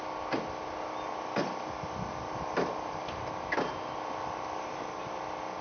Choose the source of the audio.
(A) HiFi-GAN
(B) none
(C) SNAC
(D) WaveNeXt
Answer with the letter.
B